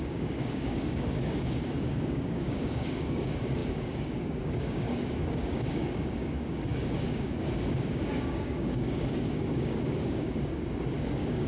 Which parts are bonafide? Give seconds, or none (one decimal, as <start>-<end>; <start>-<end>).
none